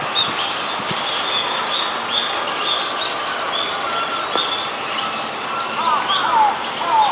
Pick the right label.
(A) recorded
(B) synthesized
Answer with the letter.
A